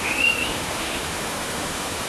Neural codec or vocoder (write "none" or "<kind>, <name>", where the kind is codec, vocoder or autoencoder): autoencoder, DAC-VAE